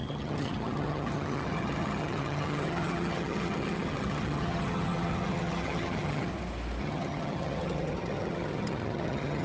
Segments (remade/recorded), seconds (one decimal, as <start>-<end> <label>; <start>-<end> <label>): 0.0-6.3 remade; 6.3-6.8 recorded; 6.8-9.4 remade